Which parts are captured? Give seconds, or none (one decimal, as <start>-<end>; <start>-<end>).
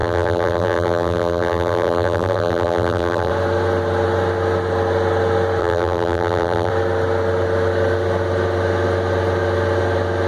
3.3-5.6; 6.7-10.3